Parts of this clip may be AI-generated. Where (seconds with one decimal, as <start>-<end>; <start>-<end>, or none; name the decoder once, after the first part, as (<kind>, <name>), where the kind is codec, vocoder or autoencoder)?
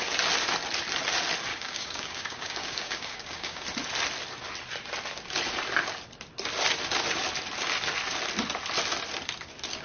1.5-3.6 (codec, DAC)